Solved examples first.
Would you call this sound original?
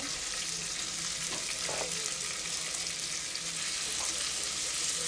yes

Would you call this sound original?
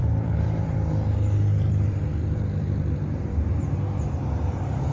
no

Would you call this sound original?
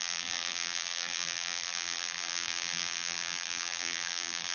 no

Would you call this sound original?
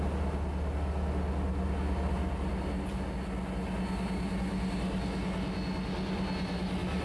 yes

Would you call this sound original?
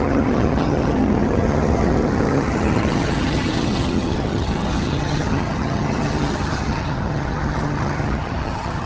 no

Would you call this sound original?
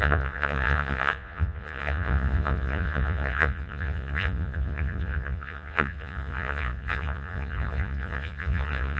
no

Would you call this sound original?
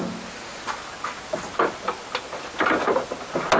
yes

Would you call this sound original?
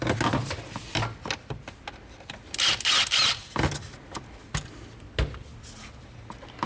yes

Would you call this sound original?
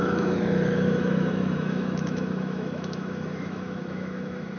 no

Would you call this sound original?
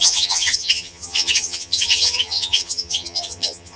no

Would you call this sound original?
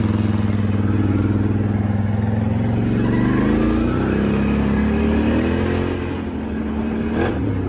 yes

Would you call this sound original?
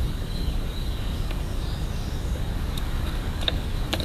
no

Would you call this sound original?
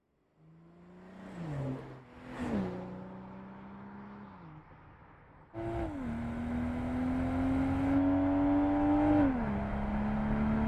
yes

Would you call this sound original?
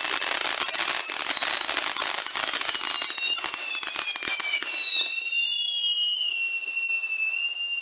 yes